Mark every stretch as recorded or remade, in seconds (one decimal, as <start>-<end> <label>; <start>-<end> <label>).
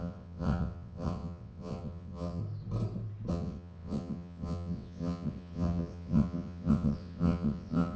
0.0-2.4 remade; 2.4-3.3 recorded; 3.3-8.0 remade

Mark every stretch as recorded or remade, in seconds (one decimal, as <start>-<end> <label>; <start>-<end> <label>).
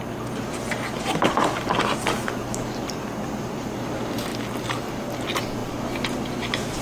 0.0-6.8 recorded